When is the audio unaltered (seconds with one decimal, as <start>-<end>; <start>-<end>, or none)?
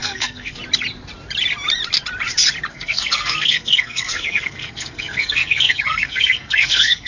0.6-2.7